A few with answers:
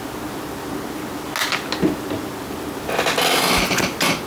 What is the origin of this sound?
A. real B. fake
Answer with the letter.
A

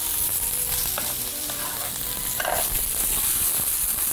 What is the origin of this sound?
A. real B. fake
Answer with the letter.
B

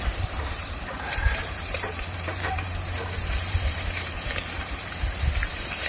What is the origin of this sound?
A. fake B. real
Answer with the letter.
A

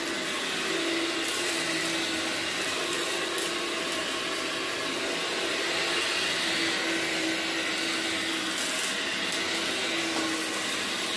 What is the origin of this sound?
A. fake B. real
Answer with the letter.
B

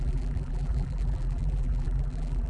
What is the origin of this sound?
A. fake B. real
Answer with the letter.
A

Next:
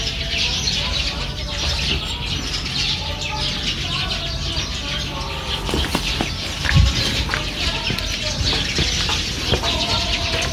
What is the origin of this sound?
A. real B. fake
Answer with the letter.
A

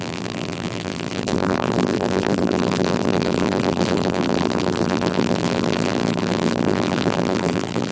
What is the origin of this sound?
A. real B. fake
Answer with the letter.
B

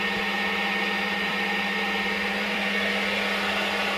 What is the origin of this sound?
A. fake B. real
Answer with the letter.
A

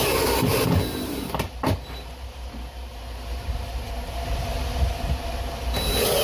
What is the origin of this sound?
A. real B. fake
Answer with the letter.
B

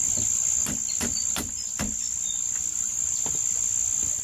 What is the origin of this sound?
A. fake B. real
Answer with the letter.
B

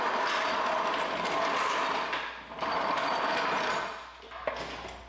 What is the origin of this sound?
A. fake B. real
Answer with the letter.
B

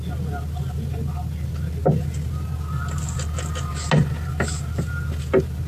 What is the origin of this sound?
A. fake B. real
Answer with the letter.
B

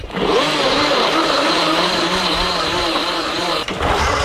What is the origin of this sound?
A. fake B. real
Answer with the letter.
A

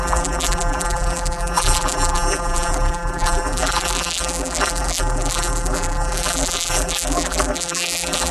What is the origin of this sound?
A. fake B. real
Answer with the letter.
A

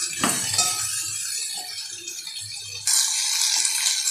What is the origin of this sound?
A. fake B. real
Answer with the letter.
B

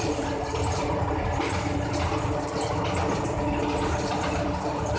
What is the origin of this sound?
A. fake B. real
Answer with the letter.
B